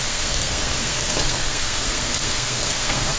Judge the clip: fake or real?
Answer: fake